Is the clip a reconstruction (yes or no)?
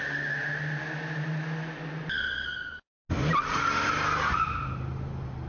no